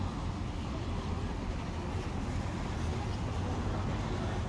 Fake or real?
real